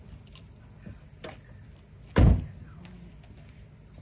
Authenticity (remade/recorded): recorded